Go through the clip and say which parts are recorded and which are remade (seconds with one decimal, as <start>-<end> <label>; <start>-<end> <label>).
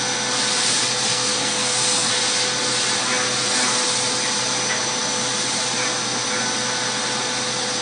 0.0-1.1 recorded; 1.1-2.1 remade; 2.1-7.8 recorded